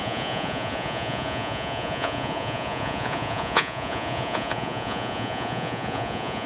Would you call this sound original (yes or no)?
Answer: no